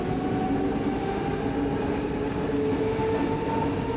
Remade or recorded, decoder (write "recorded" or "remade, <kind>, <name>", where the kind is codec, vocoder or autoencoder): recorded